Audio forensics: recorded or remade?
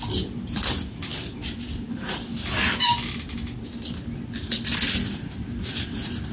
recorded